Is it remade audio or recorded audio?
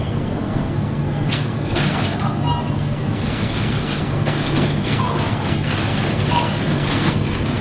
remade